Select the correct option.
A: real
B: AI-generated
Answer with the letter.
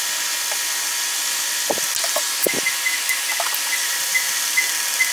A